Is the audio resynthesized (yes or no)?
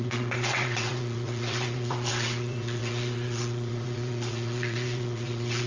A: yes